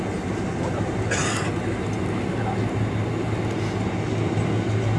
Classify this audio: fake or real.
real